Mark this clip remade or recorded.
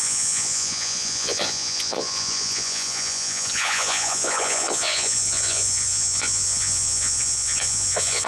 remade